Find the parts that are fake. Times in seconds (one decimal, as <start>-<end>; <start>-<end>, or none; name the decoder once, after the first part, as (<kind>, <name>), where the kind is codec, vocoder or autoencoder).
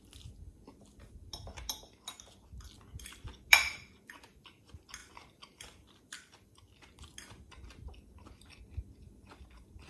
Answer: none